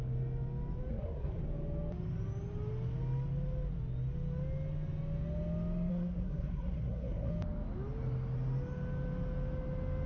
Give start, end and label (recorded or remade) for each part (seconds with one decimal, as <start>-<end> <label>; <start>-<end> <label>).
0.0-0.9 recorded; 0.9-1.4 remade; 1.4-5.9 recorded; 5.9-7.3 remade; 7.3-10.1 recorded